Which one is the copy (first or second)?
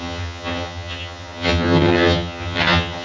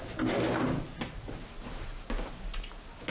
first